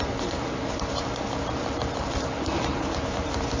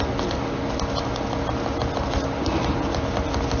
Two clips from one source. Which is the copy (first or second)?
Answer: first